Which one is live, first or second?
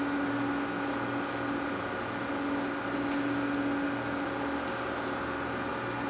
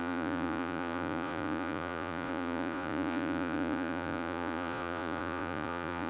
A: first